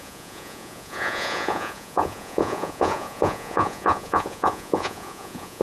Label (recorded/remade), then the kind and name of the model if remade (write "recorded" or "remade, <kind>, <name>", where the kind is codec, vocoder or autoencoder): remade, vocoder, Vocos